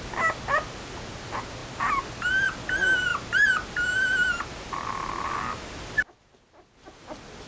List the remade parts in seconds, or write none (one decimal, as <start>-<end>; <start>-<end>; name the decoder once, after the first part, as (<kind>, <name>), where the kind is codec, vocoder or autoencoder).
none